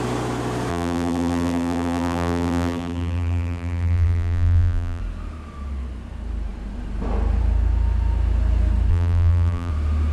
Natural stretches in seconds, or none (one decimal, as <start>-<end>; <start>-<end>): 0.0-0.7; 5.0-8.9; 9.7-10.1